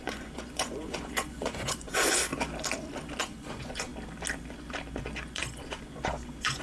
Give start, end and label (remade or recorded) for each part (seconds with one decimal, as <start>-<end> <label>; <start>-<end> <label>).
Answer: 0.0-2.3 remade; 2.3-3.2 recorded; 3.2-3.9 remade; 3.9-5.0 recorded; 5.0-6.6 remade

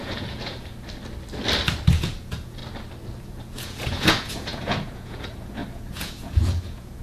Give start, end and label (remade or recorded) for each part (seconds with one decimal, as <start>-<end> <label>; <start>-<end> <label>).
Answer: 0.0-0.7 remade; 0.7-1.9 recorded; 1.9-2.6 remade; 2.6-3.2 recorded; 3.2-7.0 remade

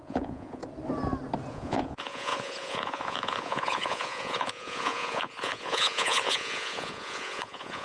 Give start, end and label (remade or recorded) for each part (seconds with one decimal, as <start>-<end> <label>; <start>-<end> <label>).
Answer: 0.0-0.6 remade; 0.6-1.5 recorded; 1.5-7.8 remade